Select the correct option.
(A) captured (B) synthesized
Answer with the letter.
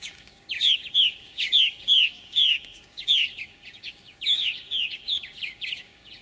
B